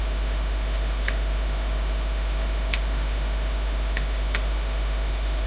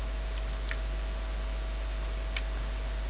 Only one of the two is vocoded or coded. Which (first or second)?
first